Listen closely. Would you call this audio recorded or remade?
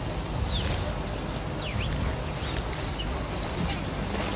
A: recorded